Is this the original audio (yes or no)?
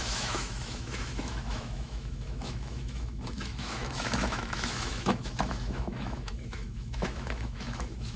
no